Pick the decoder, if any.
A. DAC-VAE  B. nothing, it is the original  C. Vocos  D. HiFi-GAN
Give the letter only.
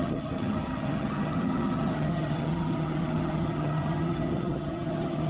D